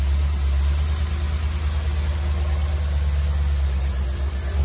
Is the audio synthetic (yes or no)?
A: no